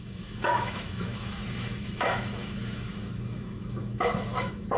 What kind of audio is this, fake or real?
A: fake